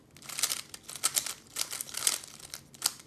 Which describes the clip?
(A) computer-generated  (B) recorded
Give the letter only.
B